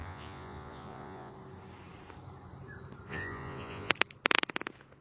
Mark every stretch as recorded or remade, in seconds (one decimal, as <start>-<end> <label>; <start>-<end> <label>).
0.0-1.3 remade; 1.3-3.1 recorded; 3.1-3.9 remade; 3.9-5.0 recorded